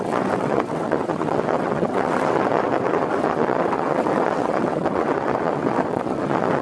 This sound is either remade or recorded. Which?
remade